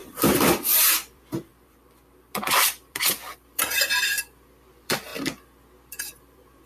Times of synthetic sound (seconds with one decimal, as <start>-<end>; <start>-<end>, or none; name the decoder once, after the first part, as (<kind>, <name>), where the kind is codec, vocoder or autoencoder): 0.0-5.1 (vocoder, BigVGAN v2); 6.0-6.7